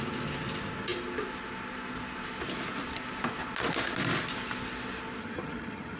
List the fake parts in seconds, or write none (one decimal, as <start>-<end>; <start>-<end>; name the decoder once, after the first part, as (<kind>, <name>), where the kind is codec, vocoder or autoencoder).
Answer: 5.2-6.0 (vocoder, HiFi-GAN)